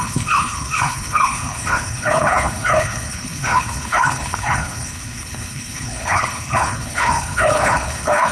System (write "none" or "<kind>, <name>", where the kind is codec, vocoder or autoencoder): codec, HILCodec